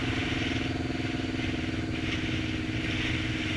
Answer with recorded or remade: recorded